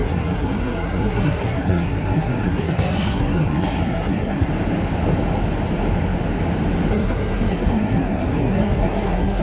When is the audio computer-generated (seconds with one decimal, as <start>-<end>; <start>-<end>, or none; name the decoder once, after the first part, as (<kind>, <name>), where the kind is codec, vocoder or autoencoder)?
0.0-4.5 (codec, SNAC); 6.9-9.4